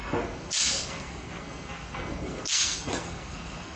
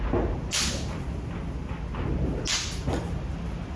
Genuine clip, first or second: second